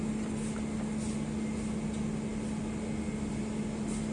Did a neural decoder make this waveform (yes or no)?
no